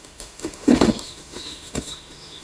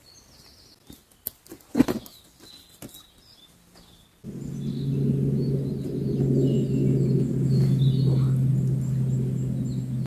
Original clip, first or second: second